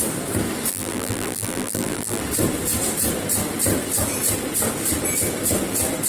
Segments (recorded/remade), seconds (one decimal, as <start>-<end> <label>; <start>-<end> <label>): 0.0-0.7 recorded; 0.7-2.2 remade; 2.2-6.1 recorded